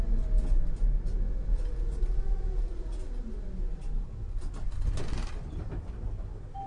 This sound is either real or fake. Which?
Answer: real